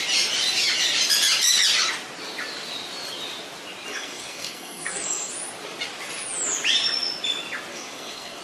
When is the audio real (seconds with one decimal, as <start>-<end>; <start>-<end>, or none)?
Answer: 0.0-3.9; 5.3-7.7